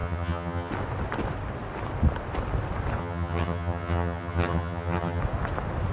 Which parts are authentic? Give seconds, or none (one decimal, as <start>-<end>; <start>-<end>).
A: 0.7-3.0; 5.2-5.9